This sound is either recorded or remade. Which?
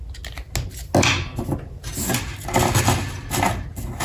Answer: recorded